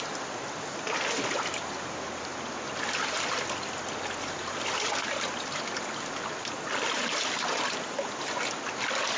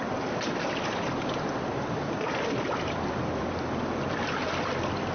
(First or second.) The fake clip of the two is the second